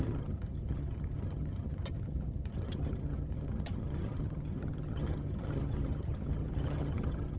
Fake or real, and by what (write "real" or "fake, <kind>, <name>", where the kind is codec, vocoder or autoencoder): fake, vocoder, HiFi-GAN